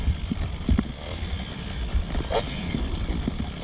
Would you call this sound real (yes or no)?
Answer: yes